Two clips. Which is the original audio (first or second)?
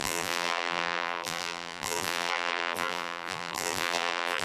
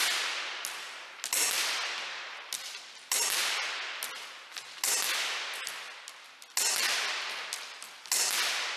second